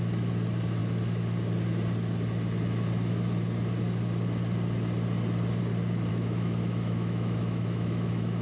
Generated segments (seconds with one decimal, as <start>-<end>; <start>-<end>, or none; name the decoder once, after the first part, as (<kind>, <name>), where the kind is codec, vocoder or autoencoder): 6.1-8.4 (autoencoder, DAC-VAE)